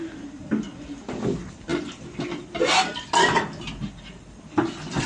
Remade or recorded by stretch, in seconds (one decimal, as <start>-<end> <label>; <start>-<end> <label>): 0.0-5.1 recorded